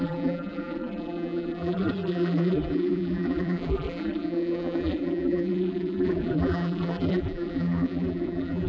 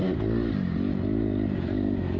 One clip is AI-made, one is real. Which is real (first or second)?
second